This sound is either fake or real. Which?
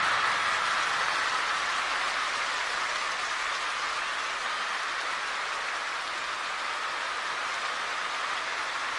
real